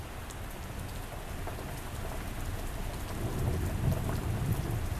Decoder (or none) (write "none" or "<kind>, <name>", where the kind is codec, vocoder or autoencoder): none